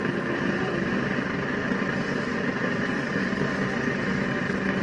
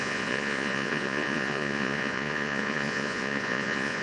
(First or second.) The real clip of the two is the first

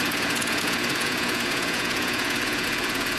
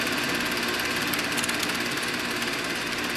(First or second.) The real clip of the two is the second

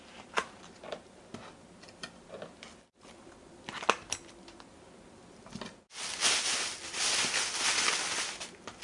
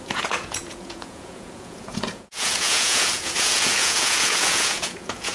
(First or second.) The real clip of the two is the first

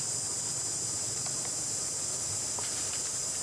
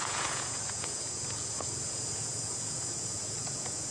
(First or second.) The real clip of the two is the first